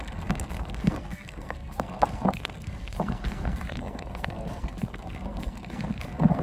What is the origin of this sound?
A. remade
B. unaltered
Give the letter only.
A